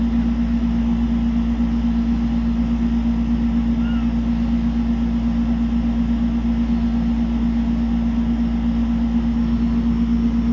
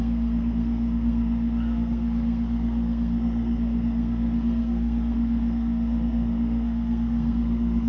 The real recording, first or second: first